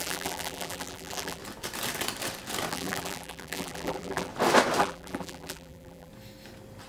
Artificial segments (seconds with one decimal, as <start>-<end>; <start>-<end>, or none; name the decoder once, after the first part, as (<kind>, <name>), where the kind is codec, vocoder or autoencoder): 0.0-1.4 (vocoder, BigVGAN v2); 2.7-4.3; 4.8-6.1